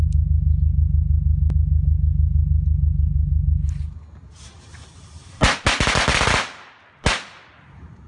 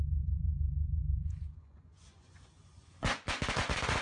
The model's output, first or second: second